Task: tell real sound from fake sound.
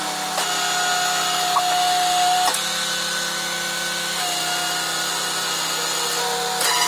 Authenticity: real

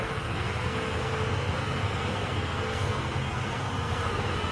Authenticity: fake